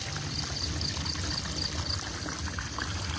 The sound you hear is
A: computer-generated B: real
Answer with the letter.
B